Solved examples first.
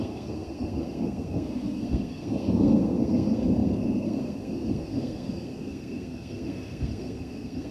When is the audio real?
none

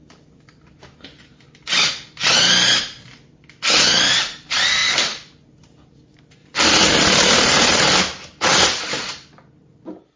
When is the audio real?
0.0-1.7; 3.3-6.4; 6.9-10.2

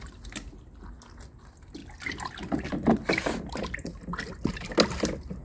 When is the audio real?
0.0-5.4

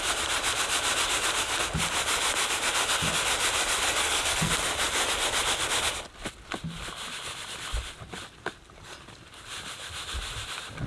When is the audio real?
0.0-4.0; 4.5-10.9

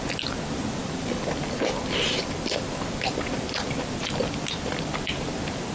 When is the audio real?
0.0-5.7